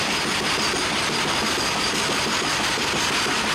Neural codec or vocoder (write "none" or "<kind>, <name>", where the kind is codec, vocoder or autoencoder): vocoder, BigVGAN v2